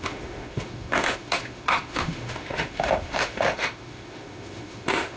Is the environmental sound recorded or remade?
remade